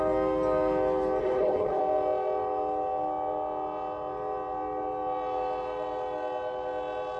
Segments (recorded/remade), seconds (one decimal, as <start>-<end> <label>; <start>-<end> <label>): 0.0-1.2 recorded; 1.2-1.8 remade; 1.8-7.2 recorded